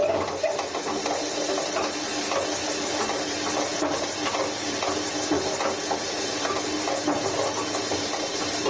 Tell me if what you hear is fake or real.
real